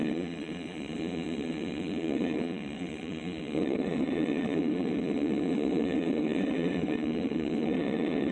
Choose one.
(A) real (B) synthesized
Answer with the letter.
B